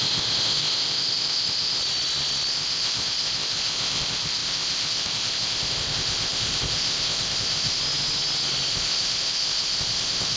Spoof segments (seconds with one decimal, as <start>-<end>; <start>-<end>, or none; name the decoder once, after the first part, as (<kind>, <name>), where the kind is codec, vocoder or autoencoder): 0.0-1.8 (codec, ZipCodec); 2.5-7.8; 8.7-10.4